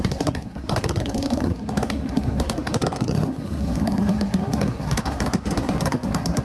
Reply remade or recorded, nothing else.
remade